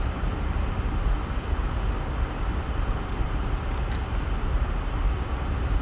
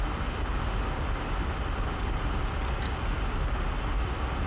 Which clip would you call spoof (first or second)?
first